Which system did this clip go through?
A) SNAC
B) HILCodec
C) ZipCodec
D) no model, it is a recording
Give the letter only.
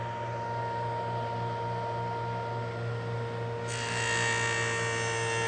D